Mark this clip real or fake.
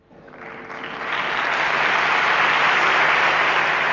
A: real